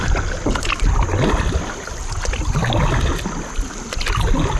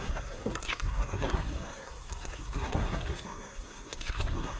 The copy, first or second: second